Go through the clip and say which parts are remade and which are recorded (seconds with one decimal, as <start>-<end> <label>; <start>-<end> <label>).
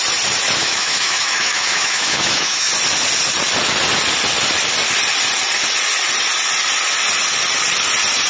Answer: 0.0-0.6 recorded; 0.6-2.7 remade; 2.7-8.3 recorded